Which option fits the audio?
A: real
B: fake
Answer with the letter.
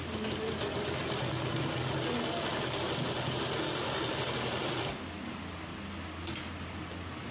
A